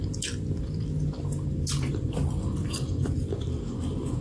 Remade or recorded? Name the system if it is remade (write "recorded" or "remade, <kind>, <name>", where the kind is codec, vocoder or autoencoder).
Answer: remade, vocoder, BigVGAN v2